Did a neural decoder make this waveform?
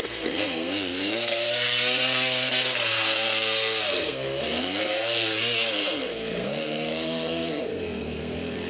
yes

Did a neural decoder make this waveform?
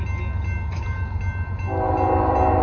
no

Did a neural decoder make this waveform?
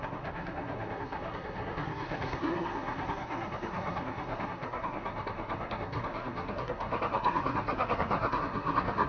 yes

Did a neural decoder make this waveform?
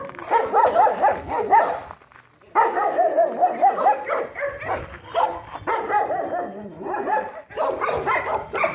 no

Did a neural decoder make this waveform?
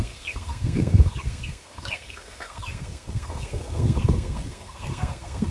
yes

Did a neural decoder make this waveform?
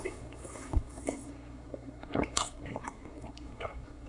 yes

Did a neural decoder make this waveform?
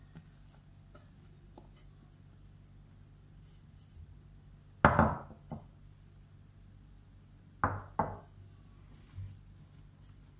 no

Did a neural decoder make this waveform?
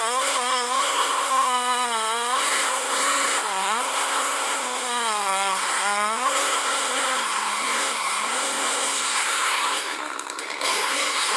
yes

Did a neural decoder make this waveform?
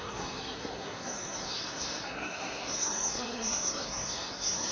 yes